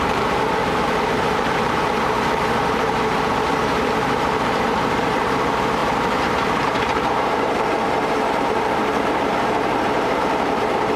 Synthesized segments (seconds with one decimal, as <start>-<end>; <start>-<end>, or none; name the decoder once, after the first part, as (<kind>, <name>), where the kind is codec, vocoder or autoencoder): 0.0-11.0 (vocoder, BigVGAN v2)